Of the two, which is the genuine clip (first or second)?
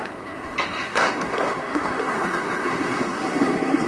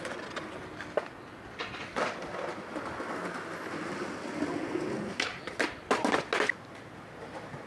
second